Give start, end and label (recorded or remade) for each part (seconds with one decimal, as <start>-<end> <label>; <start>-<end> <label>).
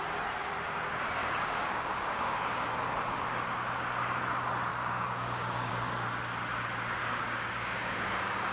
0.0-1.2 recorded; 1.2-2.6 remade; 2.6-4.7 recorded; 4.7-5.7 remade; 5.7-7.0 recorded; 7.0-8.1 remade; 8.1-8.5 recorded